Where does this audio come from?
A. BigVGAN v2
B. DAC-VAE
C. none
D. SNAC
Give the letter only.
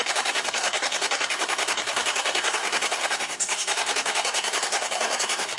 D